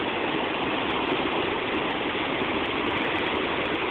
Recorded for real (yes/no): yes